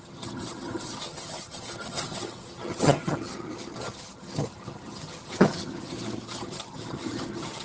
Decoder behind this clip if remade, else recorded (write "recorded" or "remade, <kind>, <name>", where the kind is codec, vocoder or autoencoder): remade, vocoder, HiFi-GAN